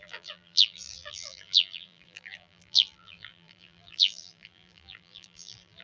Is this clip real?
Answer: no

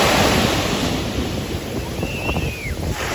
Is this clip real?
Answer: yes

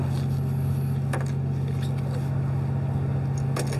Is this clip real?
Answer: yes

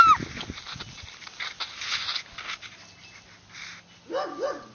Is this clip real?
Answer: yes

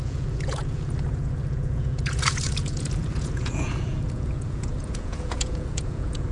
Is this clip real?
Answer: no